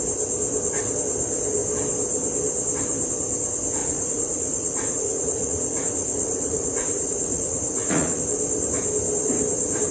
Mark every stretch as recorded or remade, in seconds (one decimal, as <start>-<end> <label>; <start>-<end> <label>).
0.0-3.8 recorded; 3.8-8.2 remade; 8.2-9.9 recorded